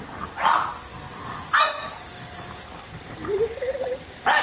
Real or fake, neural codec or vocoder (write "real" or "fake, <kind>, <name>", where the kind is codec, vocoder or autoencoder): fake, vocoder, BigVGAN v2